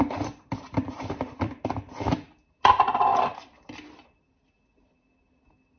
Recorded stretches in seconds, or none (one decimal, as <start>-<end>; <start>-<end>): 0.0-5.8